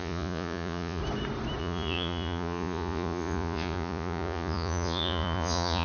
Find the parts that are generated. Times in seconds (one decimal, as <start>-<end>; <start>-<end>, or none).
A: 0.0-1.0; 1.6-5.8